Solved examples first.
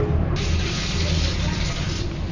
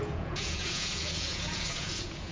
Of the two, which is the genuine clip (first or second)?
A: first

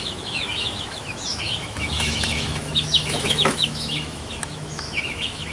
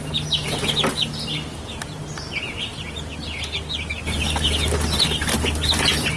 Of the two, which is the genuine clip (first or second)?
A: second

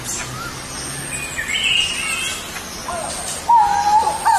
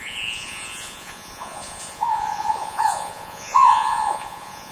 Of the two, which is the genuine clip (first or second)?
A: first